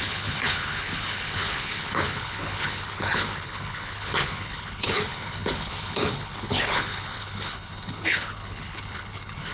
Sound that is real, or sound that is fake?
fake